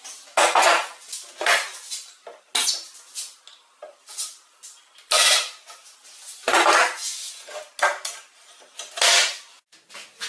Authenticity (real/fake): real